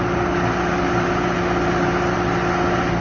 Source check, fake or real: real